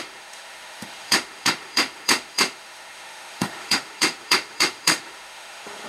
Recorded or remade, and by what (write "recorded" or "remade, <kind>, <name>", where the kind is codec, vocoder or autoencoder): remade, autoencoder, DAC-VAE